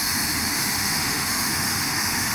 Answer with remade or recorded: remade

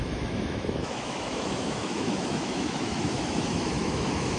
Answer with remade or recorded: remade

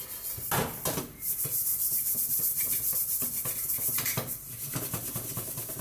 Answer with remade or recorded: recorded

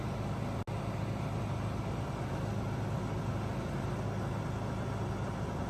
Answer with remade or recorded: recorded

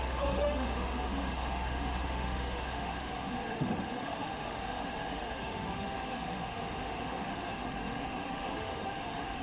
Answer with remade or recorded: remade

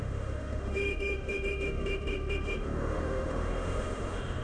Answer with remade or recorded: remade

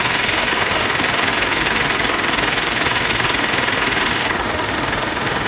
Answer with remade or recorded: remade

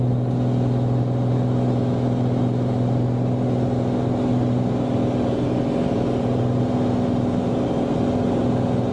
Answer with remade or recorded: recorded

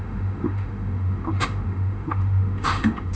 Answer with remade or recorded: remade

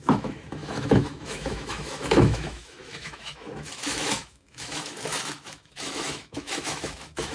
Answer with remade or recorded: remade